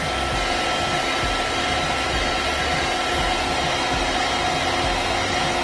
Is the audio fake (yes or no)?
no